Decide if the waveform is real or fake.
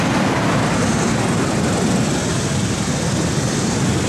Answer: real